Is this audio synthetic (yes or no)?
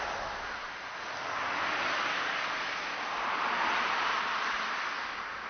no